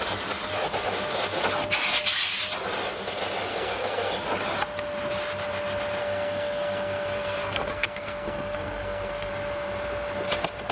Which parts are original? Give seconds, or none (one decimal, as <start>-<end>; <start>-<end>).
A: 0.0-3.5; 4.1-6.0; 9.3-10.7

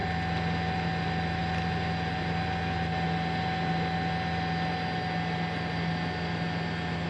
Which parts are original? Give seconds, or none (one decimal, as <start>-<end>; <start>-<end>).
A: 0.0-7.1

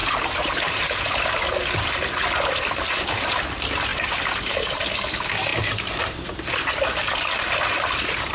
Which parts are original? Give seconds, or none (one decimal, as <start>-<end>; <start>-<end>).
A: 1.0-3.9; 4.8-5.5; 6.0-8.3

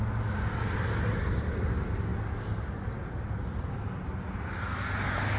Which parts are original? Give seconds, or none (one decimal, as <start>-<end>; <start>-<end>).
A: 0.0-5.4